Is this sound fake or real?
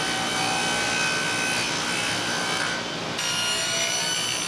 real